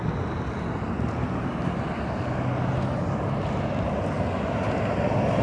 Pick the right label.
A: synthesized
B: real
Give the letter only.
B